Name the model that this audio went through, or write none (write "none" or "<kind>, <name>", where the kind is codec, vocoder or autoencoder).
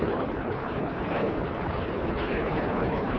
codec, HILCodec